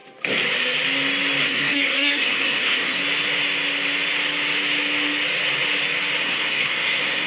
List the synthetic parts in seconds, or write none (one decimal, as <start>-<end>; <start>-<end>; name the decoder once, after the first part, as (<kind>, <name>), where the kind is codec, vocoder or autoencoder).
1.4-3.0 (codec, SNAC); 6.2-7.3